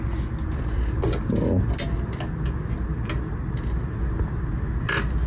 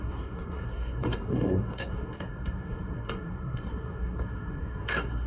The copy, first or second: second